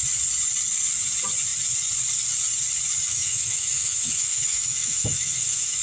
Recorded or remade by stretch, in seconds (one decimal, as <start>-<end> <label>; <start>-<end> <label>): 0.0-3.1 recorded; 3.1-5.8 remade